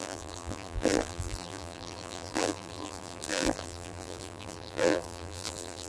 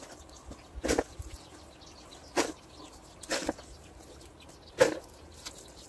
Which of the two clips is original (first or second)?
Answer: second